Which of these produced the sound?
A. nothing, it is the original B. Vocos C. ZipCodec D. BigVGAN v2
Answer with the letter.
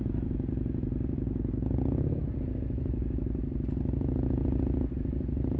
D